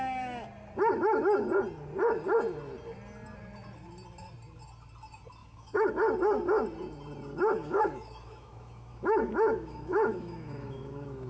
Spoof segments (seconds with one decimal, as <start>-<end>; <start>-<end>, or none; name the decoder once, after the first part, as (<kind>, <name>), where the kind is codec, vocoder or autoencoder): 5.4-5.9 (autoencoder, DAC-VAE); 7.6-11.3